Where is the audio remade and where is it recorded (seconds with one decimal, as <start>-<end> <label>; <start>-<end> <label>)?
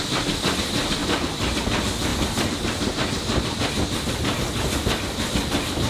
0.0-1.0 recorded; 1.0-1.6 remade; 1.6-2.1 recorded; 2.1-2.6 remade; 2.6-5.9 recorded